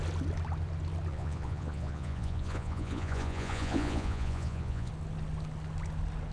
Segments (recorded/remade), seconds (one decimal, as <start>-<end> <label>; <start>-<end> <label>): 0.0-1.1 recorded; 1.1-4.9 remade; 4.9-6.3 recorded